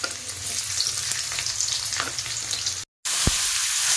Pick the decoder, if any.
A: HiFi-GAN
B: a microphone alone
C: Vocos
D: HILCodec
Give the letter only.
B